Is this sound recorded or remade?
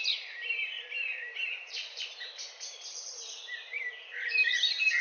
remade